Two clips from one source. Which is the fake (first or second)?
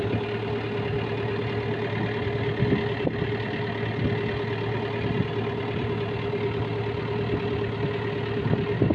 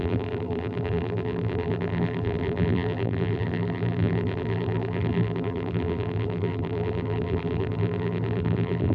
second